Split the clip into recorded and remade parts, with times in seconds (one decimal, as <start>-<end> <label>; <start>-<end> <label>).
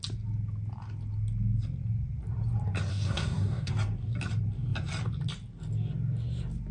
0.0-2.9 recorded; 2.9-3.7 remade; 3.7-6.7 recorded